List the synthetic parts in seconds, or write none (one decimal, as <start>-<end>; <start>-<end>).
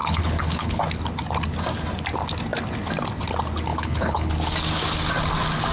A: 0.0-0.8; 3.7-4.3